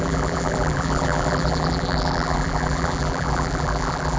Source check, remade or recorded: remade